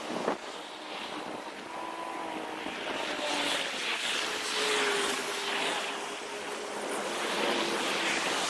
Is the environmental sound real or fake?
real